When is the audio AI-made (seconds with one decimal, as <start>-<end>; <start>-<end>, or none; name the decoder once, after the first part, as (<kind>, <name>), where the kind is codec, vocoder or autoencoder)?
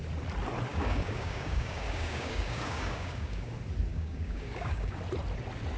0.7-3.5 (codec, DAC); 3.9-5.0